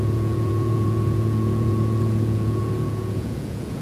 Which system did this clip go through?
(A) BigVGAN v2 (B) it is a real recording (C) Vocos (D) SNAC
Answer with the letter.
C